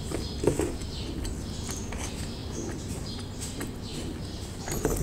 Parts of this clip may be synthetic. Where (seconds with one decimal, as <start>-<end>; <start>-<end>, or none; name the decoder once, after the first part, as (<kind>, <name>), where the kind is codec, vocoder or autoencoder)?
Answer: none